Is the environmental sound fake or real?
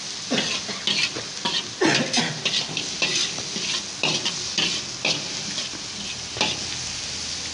real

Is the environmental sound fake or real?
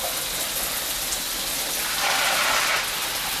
real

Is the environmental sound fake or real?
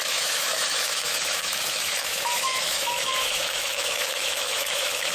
fake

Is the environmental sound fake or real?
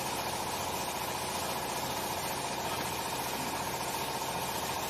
real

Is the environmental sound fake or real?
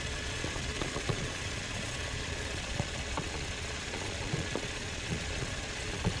fake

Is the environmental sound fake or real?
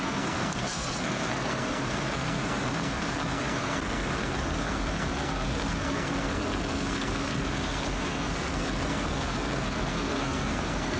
fake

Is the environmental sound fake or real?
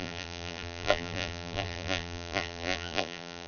fake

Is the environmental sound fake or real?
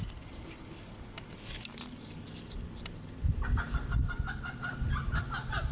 real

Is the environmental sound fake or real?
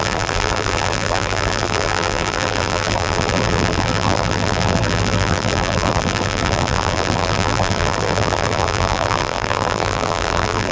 fake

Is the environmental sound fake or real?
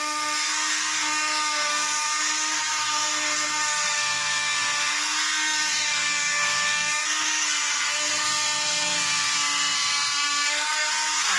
fake